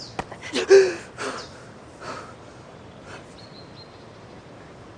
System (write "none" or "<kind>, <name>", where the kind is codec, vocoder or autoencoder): none